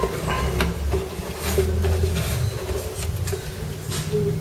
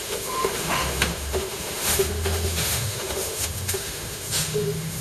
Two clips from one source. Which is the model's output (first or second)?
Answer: second